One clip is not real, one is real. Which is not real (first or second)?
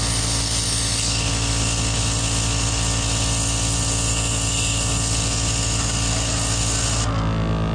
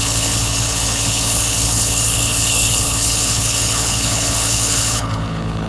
second